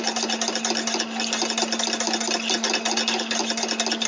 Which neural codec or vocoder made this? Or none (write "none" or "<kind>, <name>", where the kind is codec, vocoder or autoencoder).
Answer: none